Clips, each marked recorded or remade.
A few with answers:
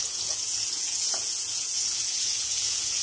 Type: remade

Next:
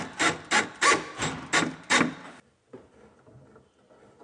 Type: recorded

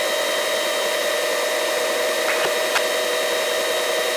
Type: recorded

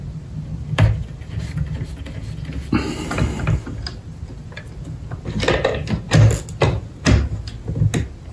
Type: recorded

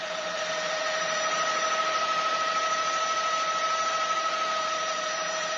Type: remade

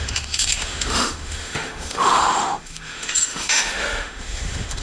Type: remade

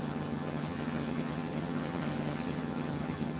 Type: remade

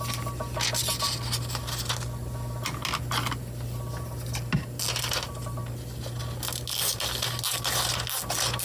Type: recorded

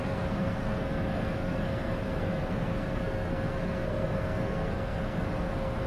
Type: remade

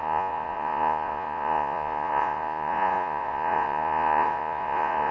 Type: remade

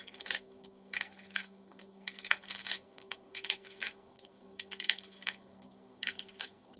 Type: remade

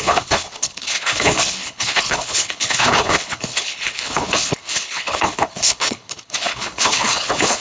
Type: remade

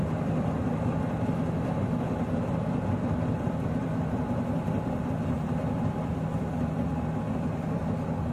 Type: recorded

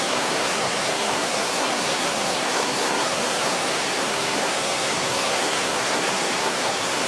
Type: remade